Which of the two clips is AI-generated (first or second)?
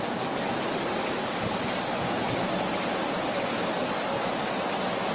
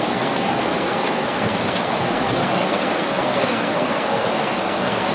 second